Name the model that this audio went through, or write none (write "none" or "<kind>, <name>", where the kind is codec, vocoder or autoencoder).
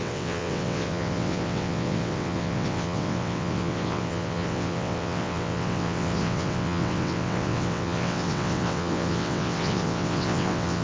vocoder, WaveNeXt